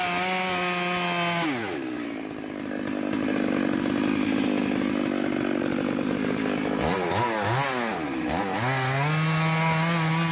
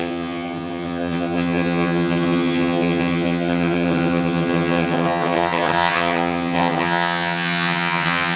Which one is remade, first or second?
second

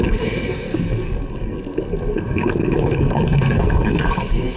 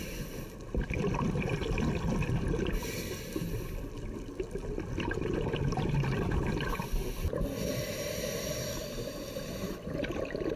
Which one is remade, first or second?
first